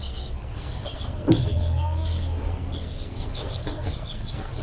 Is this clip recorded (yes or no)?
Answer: no